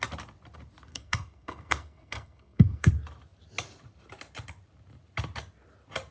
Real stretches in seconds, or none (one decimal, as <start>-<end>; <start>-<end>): 0.0-0.9; 2.9-6.1

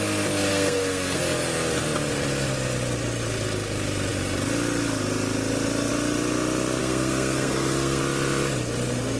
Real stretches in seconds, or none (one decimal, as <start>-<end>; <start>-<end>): 0.0-0.5; 1.2-6.8; 8.0-9.2

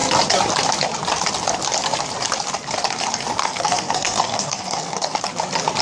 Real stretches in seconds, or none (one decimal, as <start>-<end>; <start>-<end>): 0.0-3.4; 5.2-5.8

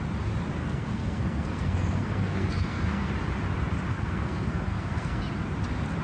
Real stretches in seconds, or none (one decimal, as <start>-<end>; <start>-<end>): 0.0-0.6; 3.1-3.9; 5.2-6.0

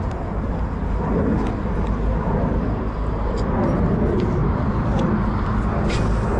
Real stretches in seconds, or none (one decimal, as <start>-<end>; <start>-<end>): 0.0-6.4

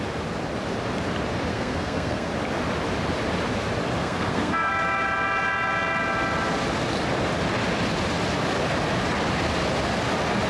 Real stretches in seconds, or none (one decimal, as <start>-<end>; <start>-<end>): 0.0-1.5; 2.3-4.0; 4.7-10.5